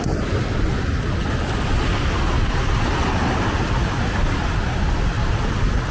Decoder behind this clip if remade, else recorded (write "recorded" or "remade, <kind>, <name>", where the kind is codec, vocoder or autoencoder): recorded